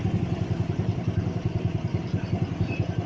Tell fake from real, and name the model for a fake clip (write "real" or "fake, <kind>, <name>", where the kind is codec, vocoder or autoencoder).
real